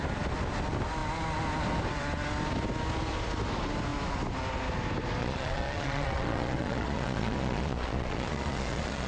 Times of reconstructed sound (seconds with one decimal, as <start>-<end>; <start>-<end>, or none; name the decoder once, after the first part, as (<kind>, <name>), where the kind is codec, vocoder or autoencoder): 5.2-9.1 (vocoder, Vocos)